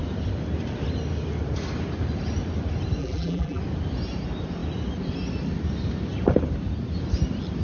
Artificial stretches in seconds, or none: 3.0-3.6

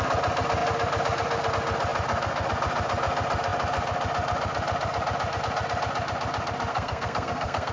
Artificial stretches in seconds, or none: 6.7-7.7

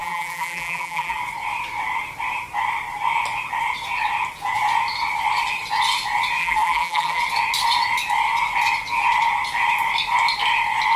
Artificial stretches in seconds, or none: 0.0-1.2; 6.4-7.2

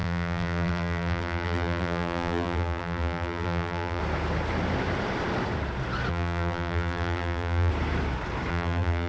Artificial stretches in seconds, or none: 0.0-4.0; 6.1-7.7; 8.5-9.1